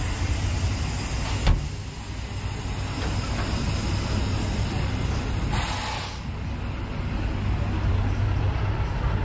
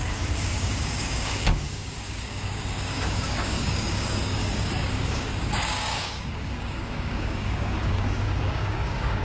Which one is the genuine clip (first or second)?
first